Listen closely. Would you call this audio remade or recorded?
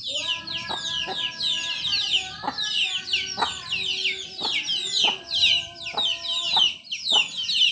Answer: recorded